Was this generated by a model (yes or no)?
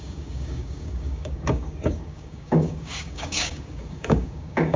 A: yes